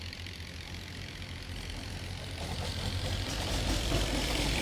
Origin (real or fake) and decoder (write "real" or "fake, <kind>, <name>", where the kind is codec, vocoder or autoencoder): fake, vocoder, BigVGAN v2